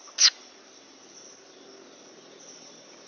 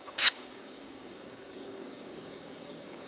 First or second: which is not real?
second